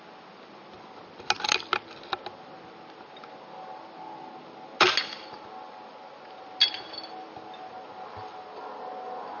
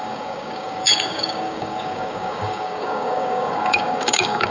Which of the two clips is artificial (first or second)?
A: second